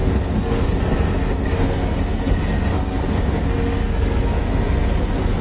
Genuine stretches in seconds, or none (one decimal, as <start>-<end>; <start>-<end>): none